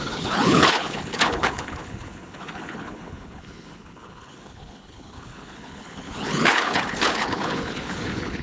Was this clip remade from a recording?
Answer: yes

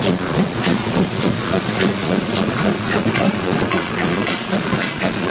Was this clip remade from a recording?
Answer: yes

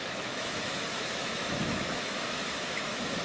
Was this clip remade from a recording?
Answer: yes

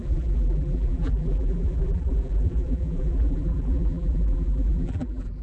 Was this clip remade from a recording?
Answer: yes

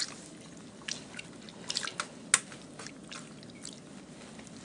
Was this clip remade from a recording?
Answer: no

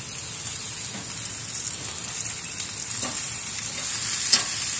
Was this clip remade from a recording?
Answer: no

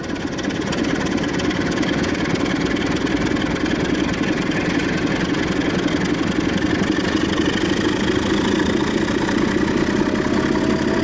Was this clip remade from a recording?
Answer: no